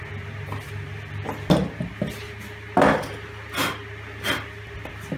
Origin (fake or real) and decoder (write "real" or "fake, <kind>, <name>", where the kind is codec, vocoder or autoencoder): real